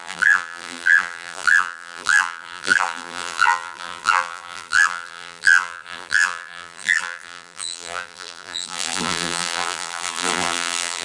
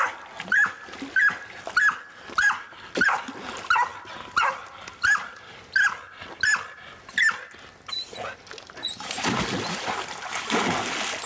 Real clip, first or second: second